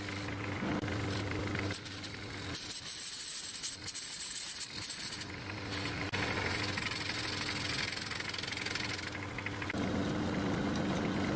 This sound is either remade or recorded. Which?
recorded